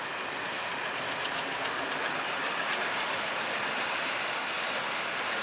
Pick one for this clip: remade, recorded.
recorded